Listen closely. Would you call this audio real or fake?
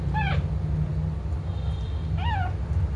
real